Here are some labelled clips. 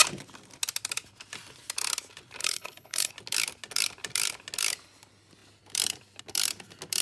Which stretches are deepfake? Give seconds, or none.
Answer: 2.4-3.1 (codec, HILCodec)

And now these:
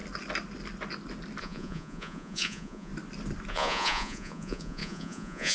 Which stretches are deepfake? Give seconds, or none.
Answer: 1.4-2.9 (vocoder, Vocos); 3.5-5.5